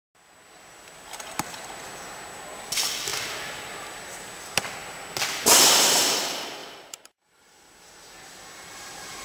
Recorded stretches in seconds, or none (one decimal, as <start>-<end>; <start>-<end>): 0.0-6.6